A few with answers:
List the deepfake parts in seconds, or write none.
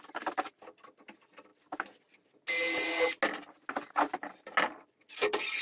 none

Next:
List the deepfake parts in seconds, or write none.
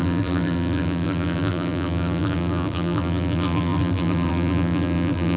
0.0-5.4 (vocoder, BigVGAN v2)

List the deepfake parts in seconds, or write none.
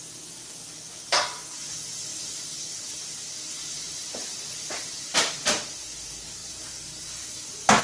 3.6-4.7 (vocoder, BigVGAN v2)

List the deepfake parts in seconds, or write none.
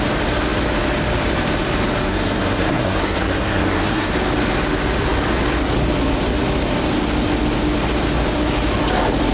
2.1-4.1 (codec, SNAC)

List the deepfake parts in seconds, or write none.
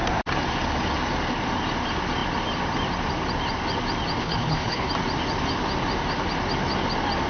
4.2-4.9 (codec, HILCodec)